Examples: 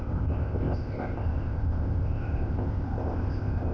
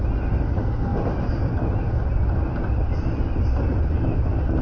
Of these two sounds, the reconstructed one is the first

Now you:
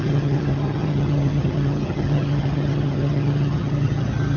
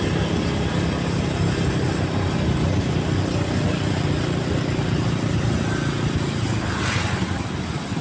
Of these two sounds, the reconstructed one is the first